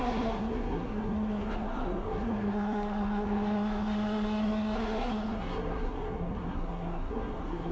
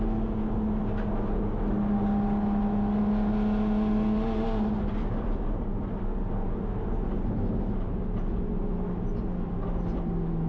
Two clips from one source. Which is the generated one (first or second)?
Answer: first